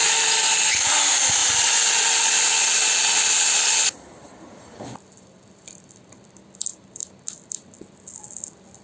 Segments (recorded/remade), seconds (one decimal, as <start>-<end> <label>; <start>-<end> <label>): 0.0-0.9 remade; 0.9-1.4 recorded; 1.4-6.0 remade; 6.0-8.8 recorded